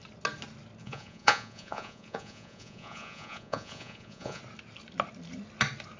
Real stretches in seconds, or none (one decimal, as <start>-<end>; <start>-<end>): 0.0-0.8; 4.4-6.0

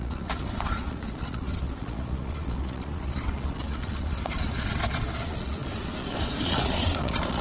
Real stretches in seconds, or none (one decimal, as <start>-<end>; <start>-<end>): none

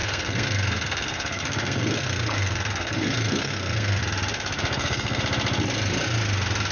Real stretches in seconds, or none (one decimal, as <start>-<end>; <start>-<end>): 4.0-4.7; 5.2-6.7

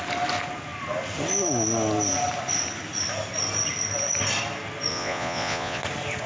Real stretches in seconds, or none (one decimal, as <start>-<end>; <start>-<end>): 0.0-4.9; 5.8-6.3

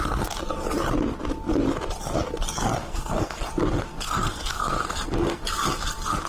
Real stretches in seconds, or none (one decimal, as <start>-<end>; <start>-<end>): 0.0-2.8; 3.4-3.9; 5.4-6.3

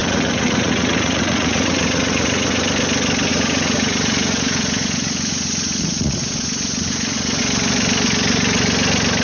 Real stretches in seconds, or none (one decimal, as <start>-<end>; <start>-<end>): 2.6-3.3; 7.4-9.2